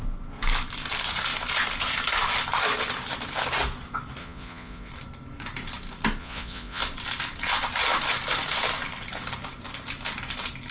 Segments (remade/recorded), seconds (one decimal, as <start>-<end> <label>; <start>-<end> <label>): 0.0-4.2 recorded; 4.2-4.9 remade; 4.9-6.2 recorded; 6.2-6.8 remade; 6.8-10.7 recorded